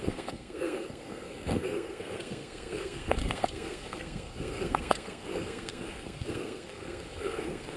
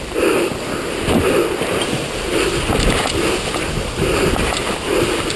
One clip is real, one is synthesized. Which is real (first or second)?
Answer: second